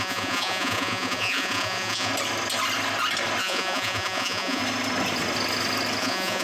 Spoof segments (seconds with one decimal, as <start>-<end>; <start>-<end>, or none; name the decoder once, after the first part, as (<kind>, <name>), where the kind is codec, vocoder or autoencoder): 0.0-2.1 (vocoder, Vocos); 3.4-4.6; 6.0-6.4